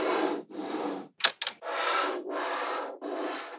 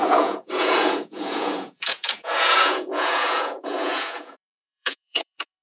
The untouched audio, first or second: first